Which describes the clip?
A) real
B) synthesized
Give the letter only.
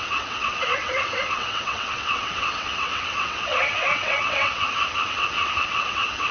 B